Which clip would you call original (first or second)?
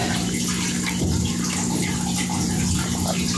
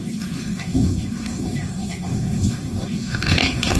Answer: first